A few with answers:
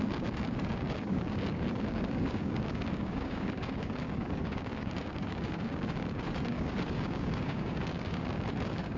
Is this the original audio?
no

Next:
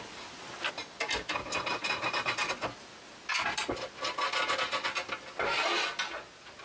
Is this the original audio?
yes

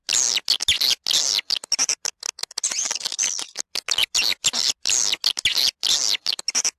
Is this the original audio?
yes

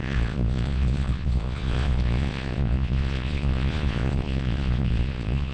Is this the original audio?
no